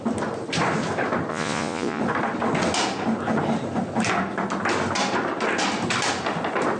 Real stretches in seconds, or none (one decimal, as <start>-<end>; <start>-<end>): 0.0-1.3; 2.0-6.8